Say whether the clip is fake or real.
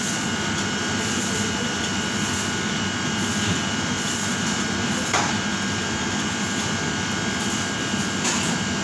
fake